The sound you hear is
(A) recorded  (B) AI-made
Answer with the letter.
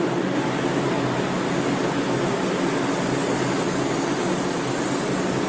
A